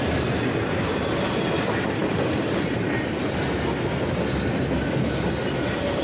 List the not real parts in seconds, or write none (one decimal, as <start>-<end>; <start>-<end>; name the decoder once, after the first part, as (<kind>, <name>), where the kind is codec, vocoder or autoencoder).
none